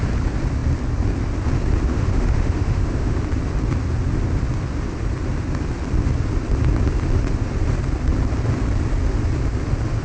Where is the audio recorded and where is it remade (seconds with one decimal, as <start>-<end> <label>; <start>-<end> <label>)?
0.0-1.9 recorded; 1.9-3.2 remade; 3.2-10.0 recorded